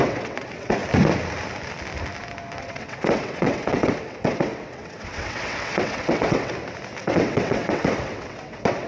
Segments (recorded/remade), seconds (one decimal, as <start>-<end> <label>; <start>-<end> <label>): 0.0-0.8 remade; 0.8-2.6 recorded; 2.6-6.5 remade; 6.5-7.0 recorded; 7.0-8.9 remade